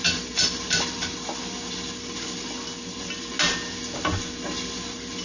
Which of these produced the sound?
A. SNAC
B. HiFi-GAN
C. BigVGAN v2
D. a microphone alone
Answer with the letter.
D